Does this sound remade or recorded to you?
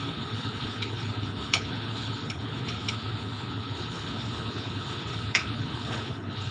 remade